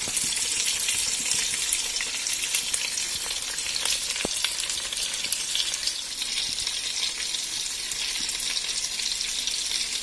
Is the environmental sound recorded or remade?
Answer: recorded